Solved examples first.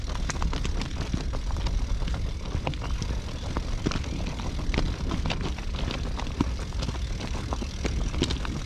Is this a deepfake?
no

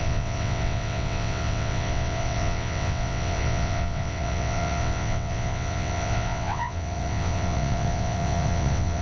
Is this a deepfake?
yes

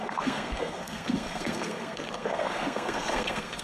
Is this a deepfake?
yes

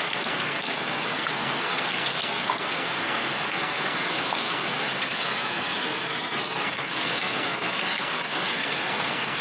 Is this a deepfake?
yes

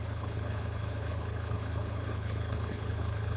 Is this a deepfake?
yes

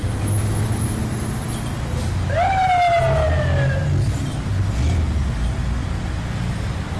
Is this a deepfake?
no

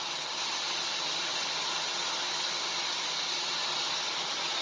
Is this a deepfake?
no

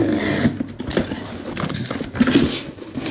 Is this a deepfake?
no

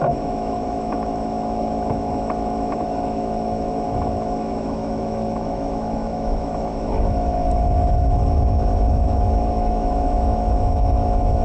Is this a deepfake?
yes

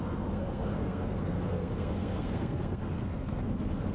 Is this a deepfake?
yes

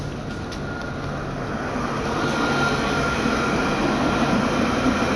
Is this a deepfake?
no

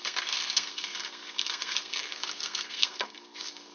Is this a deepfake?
yes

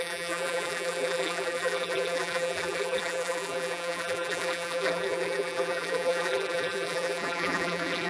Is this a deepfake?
yes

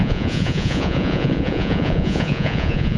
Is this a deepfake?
yes